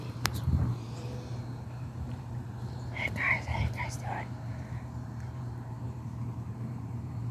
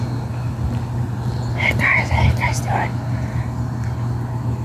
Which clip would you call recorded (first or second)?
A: second